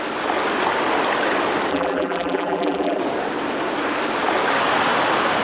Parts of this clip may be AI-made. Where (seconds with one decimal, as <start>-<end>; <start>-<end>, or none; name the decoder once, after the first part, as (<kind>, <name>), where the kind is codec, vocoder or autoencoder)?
1.7-3.0 (vocoder, BigVGAN v2)

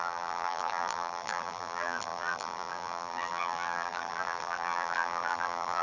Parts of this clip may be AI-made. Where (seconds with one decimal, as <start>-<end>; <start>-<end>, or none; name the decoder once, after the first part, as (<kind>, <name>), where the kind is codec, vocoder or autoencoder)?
0.0-5.8 (vocoder, BigVGAN v2)

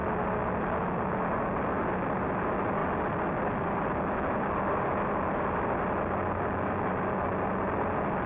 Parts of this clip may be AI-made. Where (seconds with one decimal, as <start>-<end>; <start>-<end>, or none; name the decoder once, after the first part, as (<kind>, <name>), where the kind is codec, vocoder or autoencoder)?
none

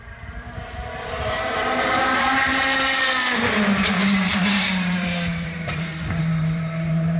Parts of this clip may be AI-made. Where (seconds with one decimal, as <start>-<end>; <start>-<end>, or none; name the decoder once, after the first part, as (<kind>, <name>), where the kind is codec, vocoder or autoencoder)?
0.0-7.2 (vocoder, BigVGAN v2)

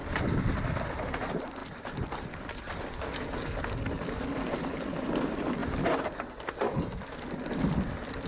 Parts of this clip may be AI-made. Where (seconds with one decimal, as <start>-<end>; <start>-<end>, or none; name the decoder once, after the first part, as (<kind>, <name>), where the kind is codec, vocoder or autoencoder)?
none

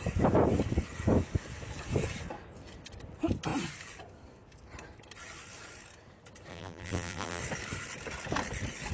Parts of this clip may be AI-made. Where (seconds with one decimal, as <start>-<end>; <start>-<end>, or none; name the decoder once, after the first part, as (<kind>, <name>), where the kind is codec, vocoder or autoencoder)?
6.5-7.4 (vocoder, BigVGAN v2)

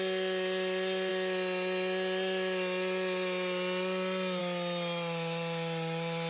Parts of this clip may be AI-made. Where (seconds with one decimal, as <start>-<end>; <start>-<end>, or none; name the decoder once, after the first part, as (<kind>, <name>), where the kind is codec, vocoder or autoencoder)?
none

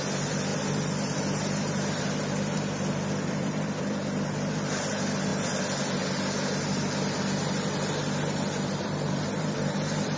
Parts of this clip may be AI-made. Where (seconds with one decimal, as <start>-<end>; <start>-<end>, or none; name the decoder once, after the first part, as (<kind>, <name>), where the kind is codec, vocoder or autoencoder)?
0.0-5.3 (vocoder, BigVGAN v2); 8.8-10.2